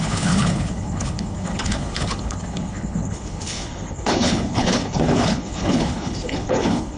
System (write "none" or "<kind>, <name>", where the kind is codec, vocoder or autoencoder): codec, HILCodec